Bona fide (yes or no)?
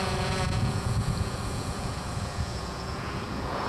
no